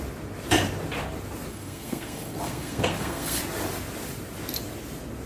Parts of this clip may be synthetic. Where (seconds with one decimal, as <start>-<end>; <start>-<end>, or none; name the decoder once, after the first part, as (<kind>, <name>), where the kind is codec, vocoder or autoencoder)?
1.5-3.4 (codec, SNAC)